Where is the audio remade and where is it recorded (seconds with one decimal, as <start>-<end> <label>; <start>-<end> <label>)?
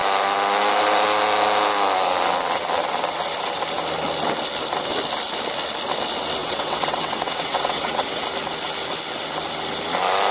0.0-6.4 recorded; 6.4-8.2 remade; 8.2-10.3 recorded